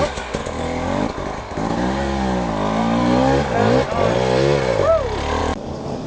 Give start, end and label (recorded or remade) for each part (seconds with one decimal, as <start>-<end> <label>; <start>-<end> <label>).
0.0-0.4 recorded; 0.4-2.5 remade; 2.5-3.0 recorded; 3.0-3.5 remade; 3.5-5.4 recorded; 5.4-6.1 remade